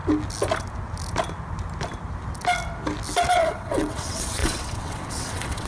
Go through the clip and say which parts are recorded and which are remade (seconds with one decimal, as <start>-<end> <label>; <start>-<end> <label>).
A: 0.0-3.4 recorded; 3.4-5.7 remade